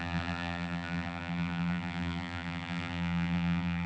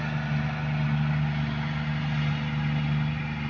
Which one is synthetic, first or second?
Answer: first